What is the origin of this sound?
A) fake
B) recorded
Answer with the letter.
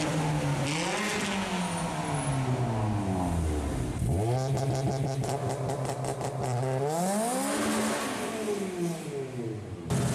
B